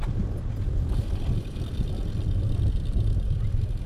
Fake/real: real